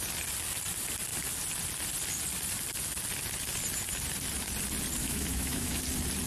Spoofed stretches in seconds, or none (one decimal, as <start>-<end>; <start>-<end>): 5.0-5.8

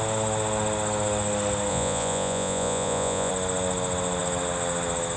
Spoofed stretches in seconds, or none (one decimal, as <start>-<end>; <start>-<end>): 1.7-3.3

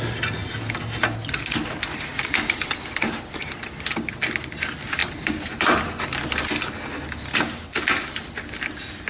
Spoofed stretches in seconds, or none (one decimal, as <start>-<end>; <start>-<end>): 5.0-5.8

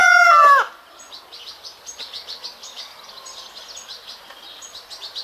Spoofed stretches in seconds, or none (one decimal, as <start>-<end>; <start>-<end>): none

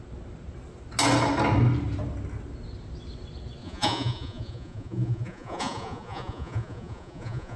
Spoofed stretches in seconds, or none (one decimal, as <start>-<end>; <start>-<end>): 3.6-7.6

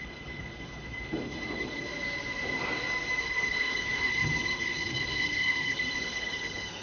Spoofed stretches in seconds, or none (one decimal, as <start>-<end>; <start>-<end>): 0.0-1.9; 3.2-6.8